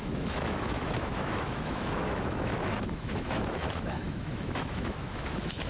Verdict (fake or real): fake